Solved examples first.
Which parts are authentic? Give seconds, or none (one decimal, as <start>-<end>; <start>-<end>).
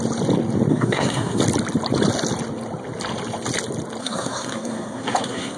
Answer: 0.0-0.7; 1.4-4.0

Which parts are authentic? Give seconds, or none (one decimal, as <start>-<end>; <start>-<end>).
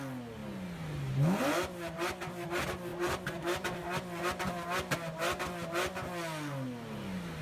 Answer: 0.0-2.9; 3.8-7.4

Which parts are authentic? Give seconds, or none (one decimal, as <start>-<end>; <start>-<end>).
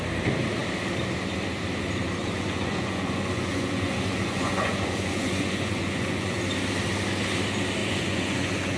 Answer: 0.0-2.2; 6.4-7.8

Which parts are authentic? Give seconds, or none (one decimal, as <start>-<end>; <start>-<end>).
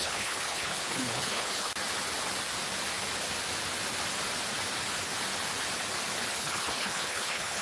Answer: 1.7-6.3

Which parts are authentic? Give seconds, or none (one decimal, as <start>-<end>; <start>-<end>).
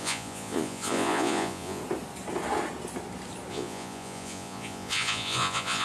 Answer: 1.8-3.5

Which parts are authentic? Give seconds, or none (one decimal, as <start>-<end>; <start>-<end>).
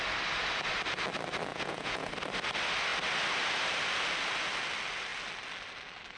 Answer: 0.0-1.5; 2.1-6.2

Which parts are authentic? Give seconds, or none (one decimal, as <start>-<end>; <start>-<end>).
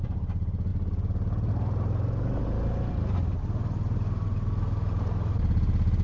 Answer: 0.0-6.0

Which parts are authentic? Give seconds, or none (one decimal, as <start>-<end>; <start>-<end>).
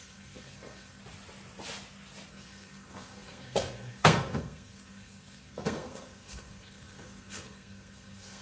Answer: 1.0-2.3